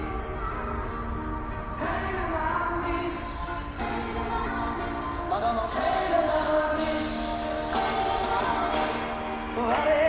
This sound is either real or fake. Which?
real